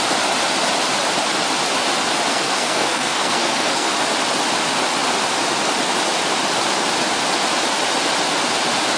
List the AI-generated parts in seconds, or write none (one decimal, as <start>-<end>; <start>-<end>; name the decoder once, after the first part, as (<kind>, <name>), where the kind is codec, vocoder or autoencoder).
2.3-3.9 (codec, SNAC)

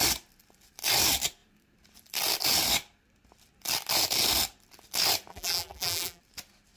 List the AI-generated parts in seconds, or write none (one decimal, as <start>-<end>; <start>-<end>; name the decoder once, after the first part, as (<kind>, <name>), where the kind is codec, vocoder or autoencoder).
5.3-6.2 (vocoder, BigVGAN v2)

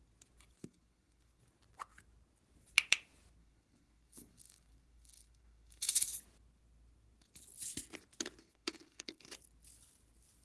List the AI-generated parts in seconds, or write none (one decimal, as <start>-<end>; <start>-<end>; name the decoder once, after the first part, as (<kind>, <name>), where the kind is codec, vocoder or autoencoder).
0.6-1.4 (codec, SNAC); 3.4-6.1; 8.4-9.3

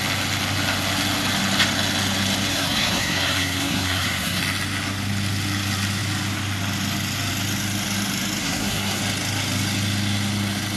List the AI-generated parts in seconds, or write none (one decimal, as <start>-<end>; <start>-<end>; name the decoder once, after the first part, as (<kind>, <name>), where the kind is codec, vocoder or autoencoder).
2.5-4.4 (codec, SNAC); 8.4-9.0

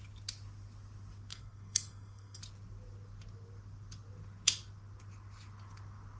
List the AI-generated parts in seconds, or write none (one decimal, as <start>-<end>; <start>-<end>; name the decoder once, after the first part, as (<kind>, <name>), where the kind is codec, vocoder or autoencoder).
1.3-2.4 (codec, SNAC)